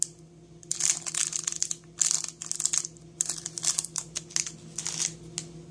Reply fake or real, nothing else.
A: real